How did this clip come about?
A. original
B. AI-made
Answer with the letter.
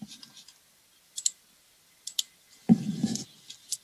A